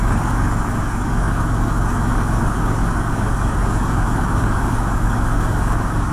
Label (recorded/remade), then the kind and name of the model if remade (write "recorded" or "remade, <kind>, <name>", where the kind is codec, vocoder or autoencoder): remade, codec, DAC